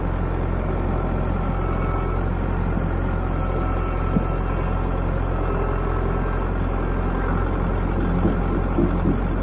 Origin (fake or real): real